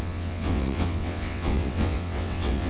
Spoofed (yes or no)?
yes